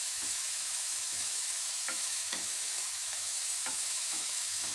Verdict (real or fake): fake